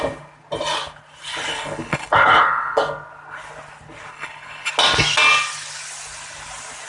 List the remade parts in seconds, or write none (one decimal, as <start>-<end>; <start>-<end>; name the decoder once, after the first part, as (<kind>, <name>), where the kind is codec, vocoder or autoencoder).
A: 1.5-2.8 (codec, HILCodec); 4.1-4.7